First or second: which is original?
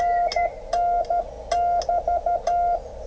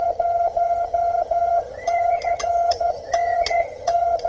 first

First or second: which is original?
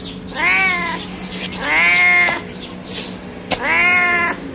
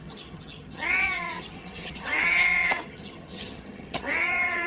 first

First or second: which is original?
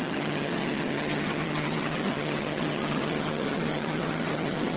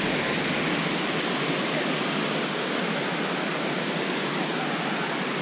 second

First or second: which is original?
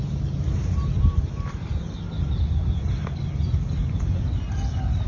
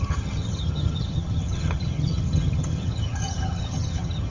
first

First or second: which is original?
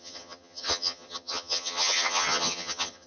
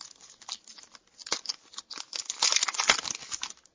second